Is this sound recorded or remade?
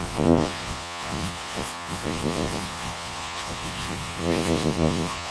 remade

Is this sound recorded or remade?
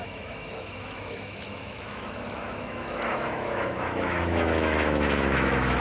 remade